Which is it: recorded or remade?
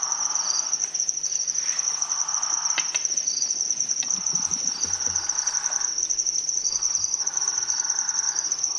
recorded